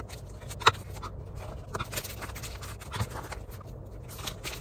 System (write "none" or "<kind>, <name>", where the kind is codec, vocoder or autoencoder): none